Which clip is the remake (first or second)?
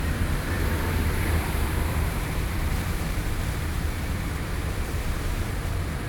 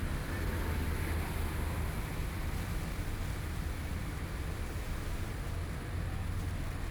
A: first